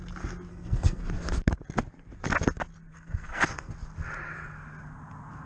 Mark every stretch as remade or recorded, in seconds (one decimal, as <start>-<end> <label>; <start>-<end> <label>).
0.0-0.5 recorded; 0.5-1.0 remade; 1.0-2.9 recorded; 2.9-3.7 remade; 3.7-5.5 recorded